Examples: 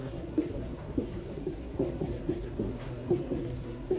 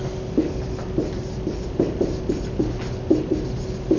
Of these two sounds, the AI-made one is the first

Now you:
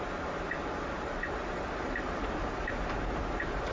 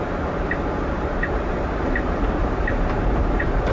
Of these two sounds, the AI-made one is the second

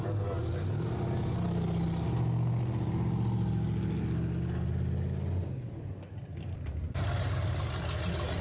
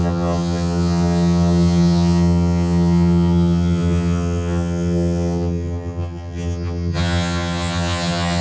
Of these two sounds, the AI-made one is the second